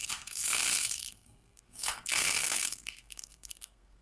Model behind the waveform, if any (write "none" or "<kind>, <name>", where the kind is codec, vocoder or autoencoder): codec, SNAC